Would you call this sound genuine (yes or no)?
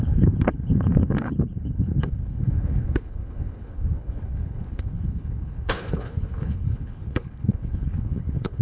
no